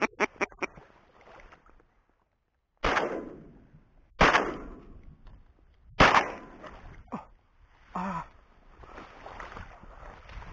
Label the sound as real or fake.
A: real